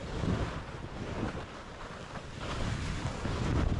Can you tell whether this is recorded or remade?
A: recorded